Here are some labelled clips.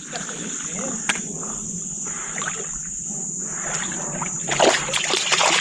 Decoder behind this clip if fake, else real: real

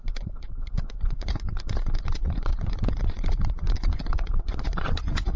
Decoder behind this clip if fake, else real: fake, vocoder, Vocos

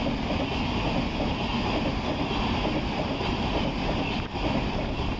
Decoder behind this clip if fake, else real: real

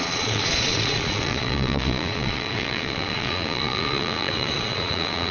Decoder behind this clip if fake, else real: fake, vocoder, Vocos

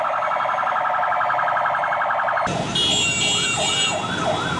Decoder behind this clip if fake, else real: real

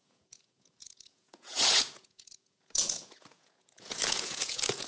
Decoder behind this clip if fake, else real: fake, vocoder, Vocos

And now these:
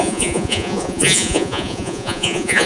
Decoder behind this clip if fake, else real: fake, vocoder, Vocos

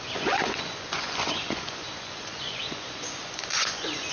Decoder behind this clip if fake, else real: fake, vocoder, Vocos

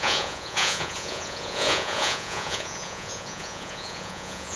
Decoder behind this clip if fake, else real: fake, vocoder, Vocos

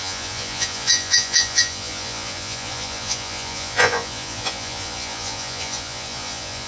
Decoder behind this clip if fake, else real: fake, vocoder, Vocos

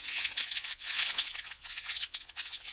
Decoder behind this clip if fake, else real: fake, vocoder, Vocos